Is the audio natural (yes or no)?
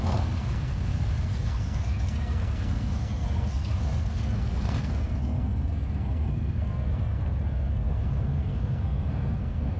no